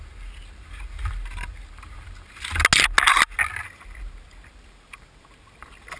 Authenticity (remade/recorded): recorded